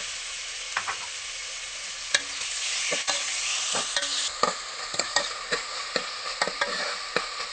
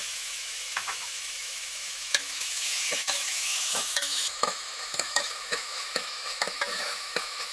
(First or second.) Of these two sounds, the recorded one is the first